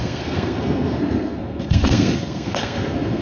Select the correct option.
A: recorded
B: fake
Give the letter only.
B